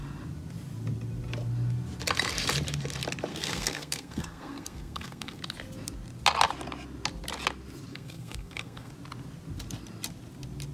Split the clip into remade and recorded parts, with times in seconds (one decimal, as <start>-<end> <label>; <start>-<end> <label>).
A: 0.0-3.3 recorded; 3.3-5.4 remade; 5.4-7.9 recorded; 7.9-8.9 remade; 8.9-10.7 recorded